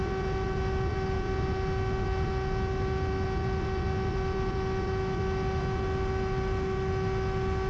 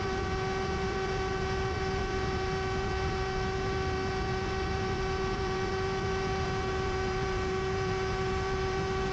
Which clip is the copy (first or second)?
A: second